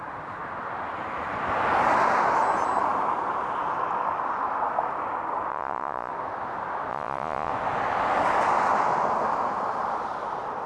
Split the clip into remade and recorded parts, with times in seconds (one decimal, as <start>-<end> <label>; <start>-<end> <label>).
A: 0.0-5.5 recorded; 5.5-6.1 remade; 6.1-6.9 recorded; 6.9-7.5 remade; 7.5-10.7 recorded